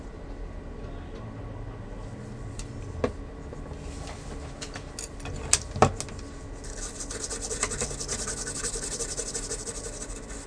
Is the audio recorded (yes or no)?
yes